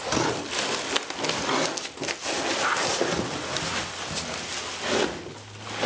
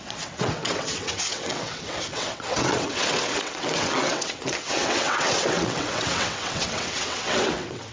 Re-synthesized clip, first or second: second